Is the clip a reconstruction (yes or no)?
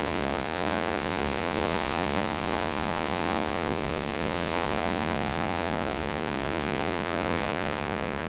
yes